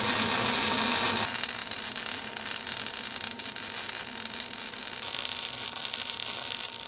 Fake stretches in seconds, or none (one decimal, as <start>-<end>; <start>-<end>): 1.6-2.9